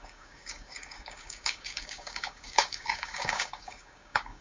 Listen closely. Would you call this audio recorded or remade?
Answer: remade